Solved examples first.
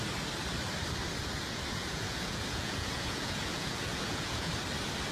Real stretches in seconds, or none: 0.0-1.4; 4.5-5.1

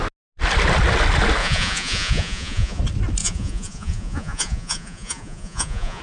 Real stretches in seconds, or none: 0.0-1.4; 2.8-3.2

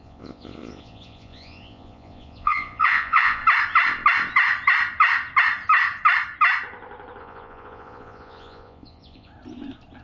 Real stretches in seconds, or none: 3.4-7.2; 9.3-10.0

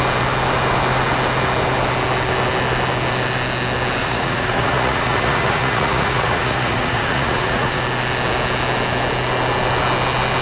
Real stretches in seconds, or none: 0.0-4.0; 7.8-10.4

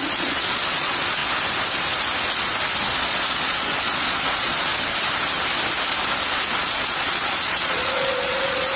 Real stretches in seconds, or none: 1.2-3.0; 4.7-6.6

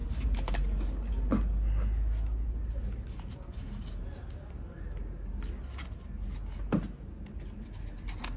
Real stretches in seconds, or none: 0.0-8.4

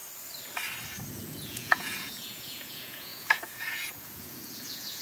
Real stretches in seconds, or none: 0.0-1.1

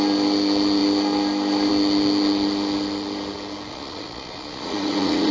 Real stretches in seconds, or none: 0.0-3.7